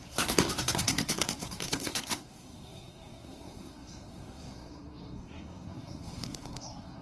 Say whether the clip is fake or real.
fake